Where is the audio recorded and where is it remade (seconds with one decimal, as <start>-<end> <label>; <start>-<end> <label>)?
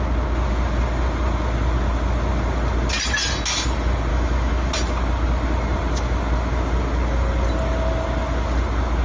0.0-4.1 recorded; 4.1-4.7 remade; 4.7-9.0 recorded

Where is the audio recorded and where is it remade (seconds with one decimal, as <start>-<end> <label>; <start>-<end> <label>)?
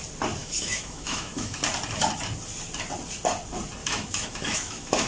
0.0-0.4 recorded; 0.4-1.6 remade; 1.6-3.8 recorded; 3.8-5.1 remade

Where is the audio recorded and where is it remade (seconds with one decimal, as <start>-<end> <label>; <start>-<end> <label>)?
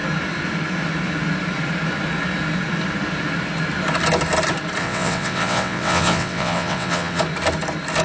0.0-4.8 recorded; 4.8-7.2 remade; 7.2-8.0 recorded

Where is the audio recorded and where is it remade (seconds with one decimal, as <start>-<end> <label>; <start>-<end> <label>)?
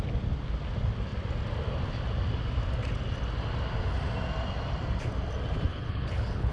0.0-5.7 recorded; 5.7-6.5 remade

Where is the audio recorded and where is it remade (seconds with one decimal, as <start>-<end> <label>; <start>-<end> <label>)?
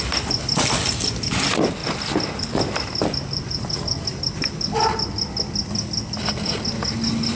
0.0-7.3 recorded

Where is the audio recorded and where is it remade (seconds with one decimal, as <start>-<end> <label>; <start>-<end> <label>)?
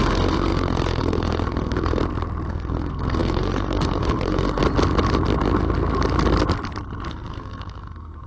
0.0-2.0 remade; 2.0-2.5 recorded; 2.5-4.6 remade; 4.6-7.1 recorded; 7.1-8.3 remade